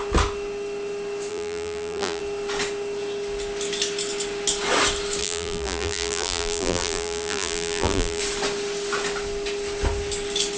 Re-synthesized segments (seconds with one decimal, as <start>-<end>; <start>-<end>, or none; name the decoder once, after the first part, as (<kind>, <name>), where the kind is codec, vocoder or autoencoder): 1.3-2.2 (vocoder, BigVGAN v2); 5.2-8.2